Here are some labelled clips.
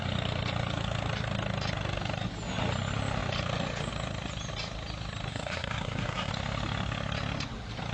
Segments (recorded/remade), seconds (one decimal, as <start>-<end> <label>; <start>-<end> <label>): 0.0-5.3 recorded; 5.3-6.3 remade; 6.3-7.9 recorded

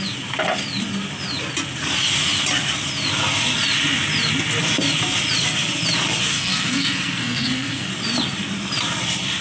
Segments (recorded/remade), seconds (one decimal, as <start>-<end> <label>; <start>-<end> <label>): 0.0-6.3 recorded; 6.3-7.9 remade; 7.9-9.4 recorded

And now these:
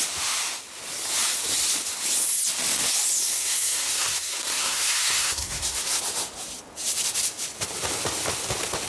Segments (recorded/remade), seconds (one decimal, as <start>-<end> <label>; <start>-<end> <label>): 0.0-3.2 recorded; 3.2-6.0 remade; 6.0-8.9 recorded